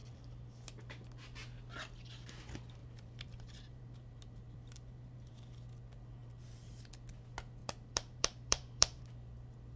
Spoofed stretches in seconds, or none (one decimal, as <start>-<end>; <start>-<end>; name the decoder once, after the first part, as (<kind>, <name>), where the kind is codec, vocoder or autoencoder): 2.8-5.3 (vocoder, BigVGAN v2); 6.2-6.9; 7.6-9.0